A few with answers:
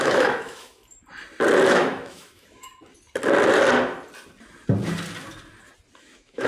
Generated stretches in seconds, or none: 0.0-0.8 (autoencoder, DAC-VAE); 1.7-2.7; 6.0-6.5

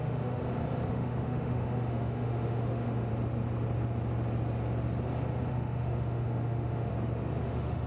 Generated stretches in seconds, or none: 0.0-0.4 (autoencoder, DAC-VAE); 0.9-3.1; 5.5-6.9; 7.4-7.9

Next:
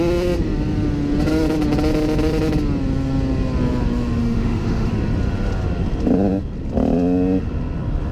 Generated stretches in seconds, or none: 4.2-4.9 (autoencoder, DAC-VAE)